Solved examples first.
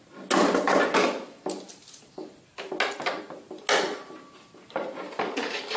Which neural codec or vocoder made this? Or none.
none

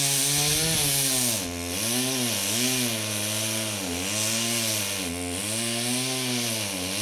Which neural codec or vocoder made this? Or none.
none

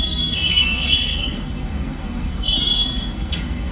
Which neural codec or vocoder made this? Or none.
codec, SNAC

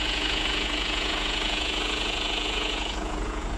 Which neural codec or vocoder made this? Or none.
vocoder, Vocos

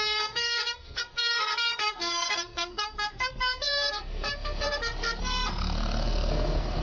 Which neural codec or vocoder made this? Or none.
codec, SNAC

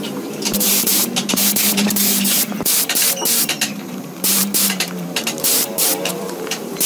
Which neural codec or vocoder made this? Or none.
vocoder, BigVGAN v2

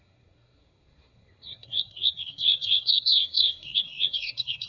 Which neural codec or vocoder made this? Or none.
codec, SNAC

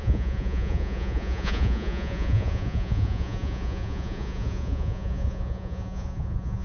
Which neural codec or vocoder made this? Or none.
vocoder, Vocos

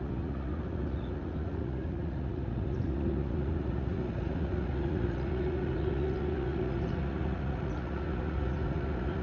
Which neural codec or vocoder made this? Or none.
vocoder, Vocos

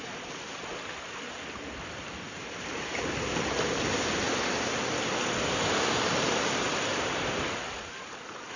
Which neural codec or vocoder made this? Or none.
none